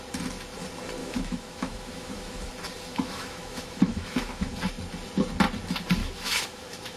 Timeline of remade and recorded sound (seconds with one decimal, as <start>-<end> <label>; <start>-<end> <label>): 0.0-1.0 recorded; 1.0-2.5 remade; 2.5-2.9 recorded; 2.9-4.6 remade; 4.6-6.0 recorded; 6.0-7.0 remade